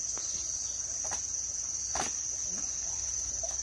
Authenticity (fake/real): real